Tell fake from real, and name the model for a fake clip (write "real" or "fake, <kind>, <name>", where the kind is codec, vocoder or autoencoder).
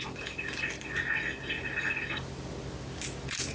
real